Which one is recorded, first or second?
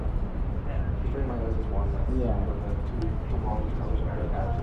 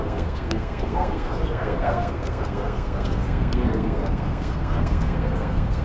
first